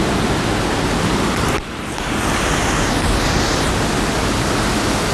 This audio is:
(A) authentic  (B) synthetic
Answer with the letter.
A